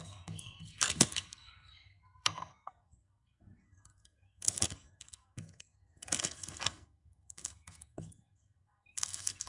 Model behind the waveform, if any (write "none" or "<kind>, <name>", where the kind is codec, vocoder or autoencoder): codec, SNAC